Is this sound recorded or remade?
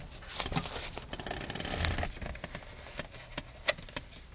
recorded